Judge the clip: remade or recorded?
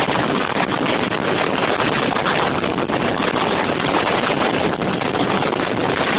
recorded